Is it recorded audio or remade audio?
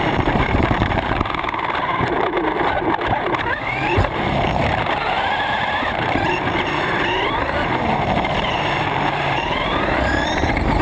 remade